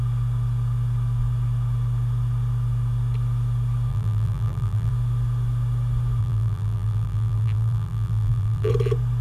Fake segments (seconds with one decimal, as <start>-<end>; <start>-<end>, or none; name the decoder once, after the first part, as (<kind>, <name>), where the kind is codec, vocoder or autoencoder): 3.9-4.9 (vocoder, BigVGAN v2); 6.2-8.7